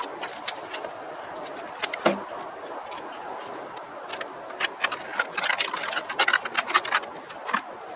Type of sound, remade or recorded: recorded